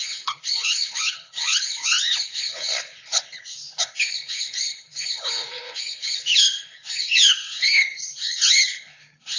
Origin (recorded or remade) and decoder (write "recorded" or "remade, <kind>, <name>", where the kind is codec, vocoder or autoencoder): remade, codec, HILCodec